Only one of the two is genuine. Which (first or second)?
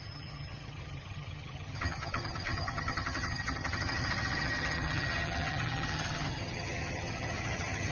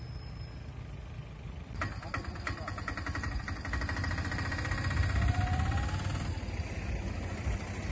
second